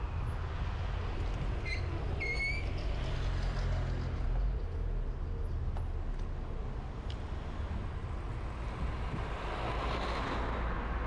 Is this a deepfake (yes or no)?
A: no